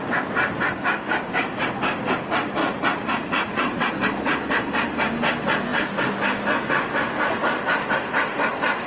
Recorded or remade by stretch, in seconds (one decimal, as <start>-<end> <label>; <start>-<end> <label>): 0.0-2.6 recorded; 2.6-3.9 remade; 3.9-8.9 recorded